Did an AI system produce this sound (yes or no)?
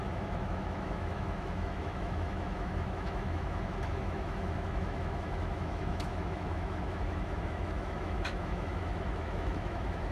yes